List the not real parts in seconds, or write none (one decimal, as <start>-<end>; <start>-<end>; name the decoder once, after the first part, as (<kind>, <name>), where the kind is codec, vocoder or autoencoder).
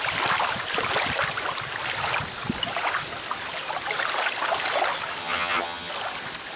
5.2-5.9 (vocoder, HiFi-GAN)